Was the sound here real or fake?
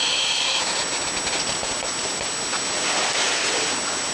real